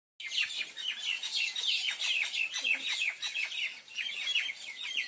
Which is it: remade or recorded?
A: recorded